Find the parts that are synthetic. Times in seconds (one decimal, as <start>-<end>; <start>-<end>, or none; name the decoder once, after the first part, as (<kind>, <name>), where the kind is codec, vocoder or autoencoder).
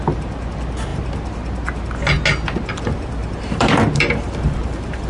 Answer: 3.2-5.1 (vocoder, BigVGAN v2)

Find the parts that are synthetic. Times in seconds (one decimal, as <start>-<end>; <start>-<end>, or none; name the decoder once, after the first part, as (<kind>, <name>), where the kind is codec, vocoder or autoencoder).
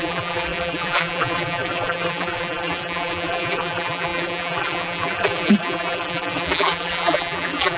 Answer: 0.0-7.8 (vocoder, BigVGAN v2)